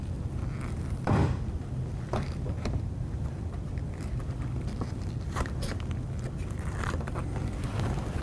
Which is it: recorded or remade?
remade